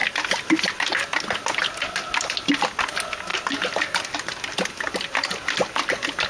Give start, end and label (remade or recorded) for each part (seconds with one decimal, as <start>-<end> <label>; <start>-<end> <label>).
0.0-6.3 recorded

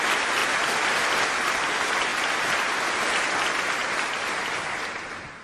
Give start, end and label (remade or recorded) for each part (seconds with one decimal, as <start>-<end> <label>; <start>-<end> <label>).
0.0-0.4 recorded; 0.4-1.3 remade; 1.3-2.1 recorded; 2.1-3.3 remade; 3.3-3.8 recorded; 3.8-4.9 remade; 4.9-5.4 recorded

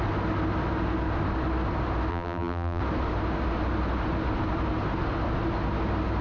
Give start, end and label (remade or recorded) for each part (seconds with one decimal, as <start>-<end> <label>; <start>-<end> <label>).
0.0-2.1 recorded; 2.1-2.8 remade; 2.8-6.2 recorded

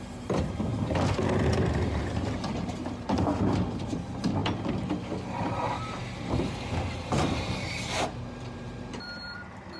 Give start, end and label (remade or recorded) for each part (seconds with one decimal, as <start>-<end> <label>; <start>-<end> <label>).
0.0-0.7 remade; 0.7-1.7 recorded; 1.7-2.8 remade; 2.8-3.8 recorded; 3.8-4.4 remade; 4.4-5.4 recorded; 5.4-9.8 remade

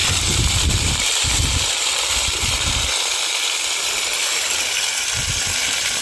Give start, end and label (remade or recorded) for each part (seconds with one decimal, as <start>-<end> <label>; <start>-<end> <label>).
0.0-3.1 remade; 3.1-6.0 recorded